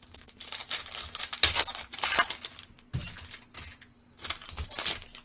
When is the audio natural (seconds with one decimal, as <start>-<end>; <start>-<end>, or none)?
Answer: 0.0-5.2